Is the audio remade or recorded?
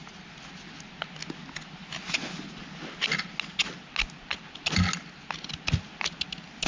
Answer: recorded